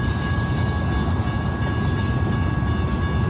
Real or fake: real